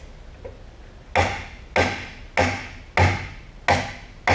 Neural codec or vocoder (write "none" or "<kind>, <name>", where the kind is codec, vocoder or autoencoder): none